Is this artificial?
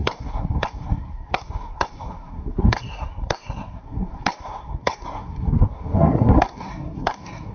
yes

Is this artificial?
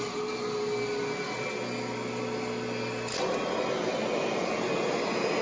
no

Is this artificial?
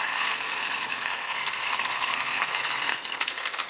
yes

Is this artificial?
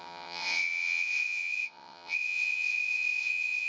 yes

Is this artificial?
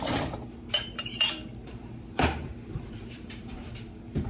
yes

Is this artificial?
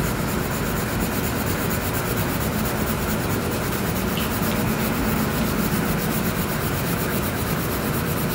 no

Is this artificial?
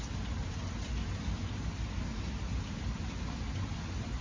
no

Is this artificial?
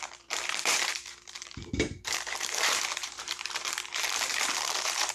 yes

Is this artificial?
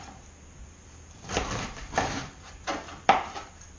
yes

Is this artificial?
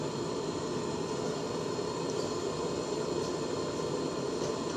no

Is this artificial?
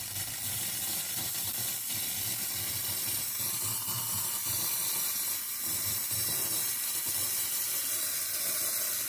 yes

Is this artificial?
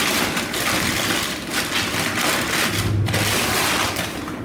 no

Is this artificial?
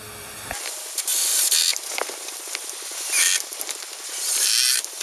no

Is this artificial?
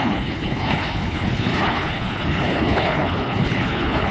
yes